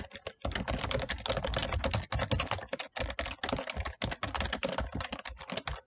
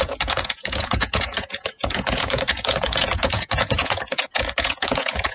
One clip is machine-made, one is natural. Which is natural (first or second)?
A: first